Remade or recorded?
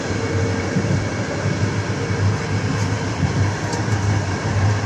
recorded